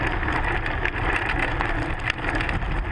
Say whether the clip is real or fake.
real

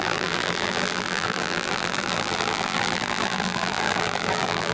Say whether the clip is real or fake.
fake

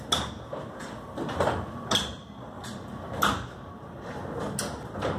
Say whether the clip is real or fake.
real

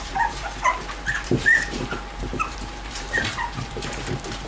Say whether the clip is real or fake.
fake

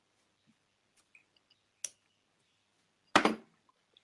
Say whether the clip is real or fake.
real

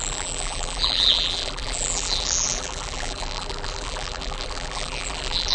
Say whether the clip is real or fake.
fake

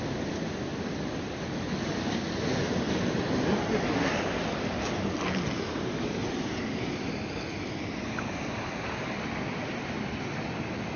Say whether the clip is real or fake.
real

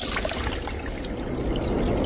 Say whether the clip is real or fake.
real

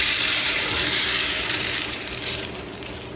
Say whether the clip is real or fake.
fake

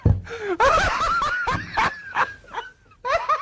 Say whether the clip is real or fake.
real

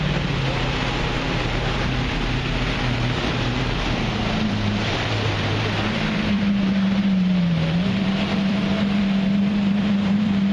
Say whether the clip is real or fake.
fake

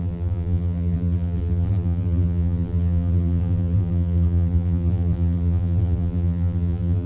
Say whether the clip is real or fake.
fake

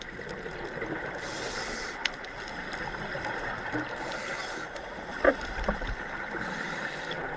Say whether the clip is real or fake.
fake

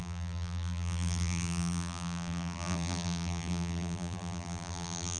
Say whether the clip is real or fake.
fake